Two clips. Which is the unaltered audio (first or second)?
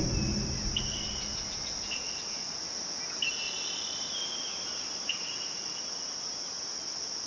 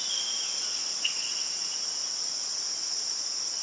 first